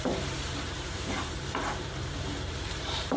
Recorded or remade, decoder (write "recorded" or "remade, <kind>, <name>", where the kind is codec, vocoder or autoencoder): remade, vocoder, BigVGAN v2